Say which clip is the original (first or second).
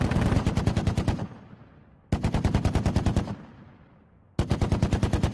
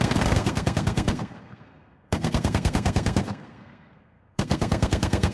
first